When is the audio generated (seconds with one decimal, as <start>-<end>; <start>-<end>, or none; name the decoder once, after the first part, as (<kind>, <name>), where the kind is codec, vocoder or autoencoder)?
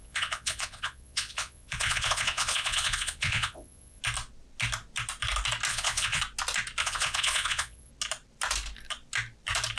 0.0-4.0 (vocoder, Vocos); 5.7-6.2; 6.8-7.9